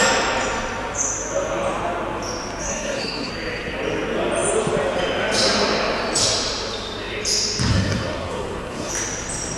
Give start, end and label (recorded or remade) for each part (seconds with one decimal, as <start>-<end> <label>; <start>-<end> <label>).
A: 0.0-2.6 recorded; 2.6-3.3 remade; 3.3-7.7 recorded; 7.7-8.9 remade; 8.9-9.6 recorded